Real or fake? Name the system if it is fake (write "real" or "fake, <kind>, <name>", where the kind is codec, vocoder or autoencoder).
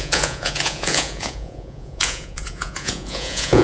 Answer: fake, vocoder, Vocos